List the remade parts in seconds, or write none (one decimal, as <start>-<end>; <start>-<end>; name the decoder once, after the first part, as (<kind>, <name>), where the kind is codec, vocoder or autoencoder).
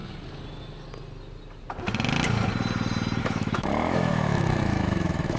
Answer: 3.2-5.4 (autoencoder, DAC-VAE)